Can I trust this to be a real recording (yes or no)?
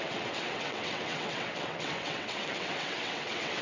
no